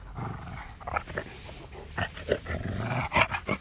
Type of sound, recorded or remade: recorded